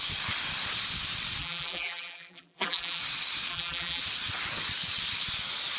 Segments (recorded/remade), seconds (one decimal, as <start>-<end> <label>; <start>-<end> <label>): 0.0-1.4 recorded; 1.4-3.0 remade; 3.0-3.5 recorded; 3.5-4.0 remade; 4.0-5.8 recorded